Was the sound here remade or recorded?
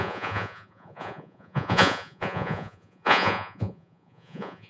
remade